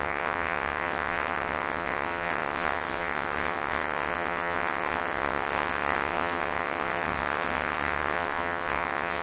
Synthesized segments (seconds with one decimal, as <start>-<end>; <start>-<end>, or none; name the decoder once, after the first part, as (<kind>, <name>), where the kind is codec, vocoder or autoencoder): 0.0-9.2 (vocoder, WaveNeXt)